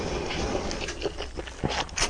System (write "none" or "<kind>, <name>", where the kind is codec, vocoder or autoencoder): none